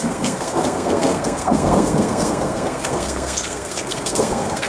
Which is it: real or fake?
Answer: fake